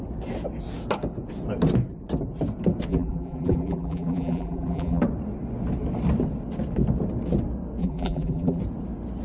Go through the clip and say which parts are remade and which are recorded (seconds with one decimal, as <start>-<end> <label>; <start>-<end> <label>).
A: 0.0-2.9 recorded; 2.9-5.0 remade; 5.0-7.8 recorded; 7.8-8.6 remade; 8.6-9.2 recorded